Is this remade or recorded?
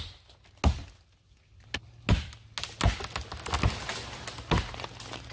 recorded